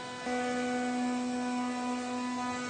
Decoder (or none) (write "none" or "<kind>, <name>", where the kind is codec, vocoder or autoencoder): none